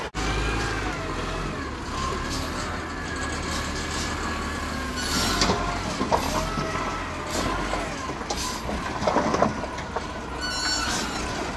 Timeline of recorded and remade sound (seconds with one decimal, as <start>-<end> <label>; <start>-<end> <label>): 0.0-11.6 recorded